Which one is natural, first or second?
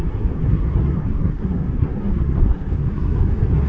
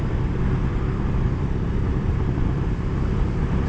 second